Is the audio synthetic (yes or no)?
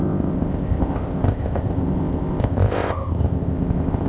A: yes